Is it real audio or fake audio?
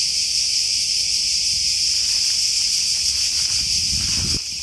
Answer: real